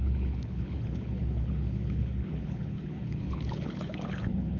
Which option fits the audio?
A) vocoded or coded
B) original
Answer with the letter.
A